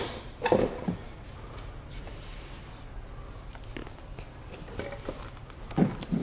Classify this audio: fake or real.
real